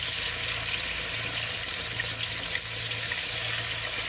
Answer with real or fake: real